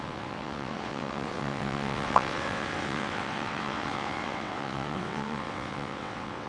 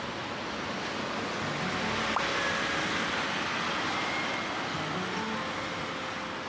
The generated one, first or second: first